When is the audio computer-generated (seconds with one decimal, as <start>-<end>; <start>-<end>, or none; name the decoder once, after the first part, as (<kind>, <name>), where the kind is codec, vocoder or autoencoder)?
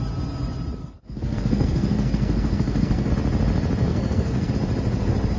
0.8-3.1 (codec, SNAC); 3.9-4.5